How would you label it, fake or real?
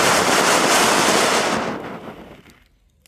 real